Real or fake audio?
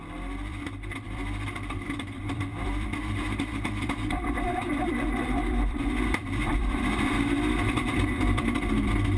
fake